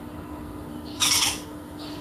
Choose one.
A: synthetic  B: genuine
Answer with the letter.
A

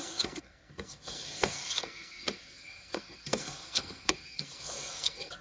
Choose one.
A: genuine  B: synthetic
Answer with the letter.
B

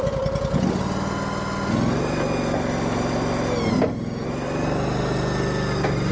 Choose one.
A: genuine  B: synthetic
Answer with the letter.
A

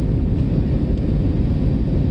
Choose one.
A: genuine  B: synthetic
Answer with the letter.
A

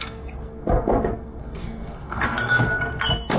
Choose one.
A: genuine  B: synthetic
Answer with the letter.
B